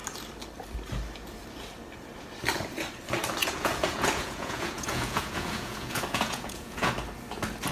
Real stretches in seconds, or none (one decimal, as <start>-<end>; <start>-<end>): 0.0-3.4; 6.9-7.7